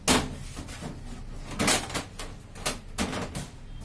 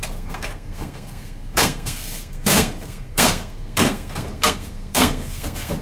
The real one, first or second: first